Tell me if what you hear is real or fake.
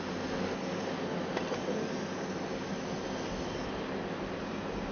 real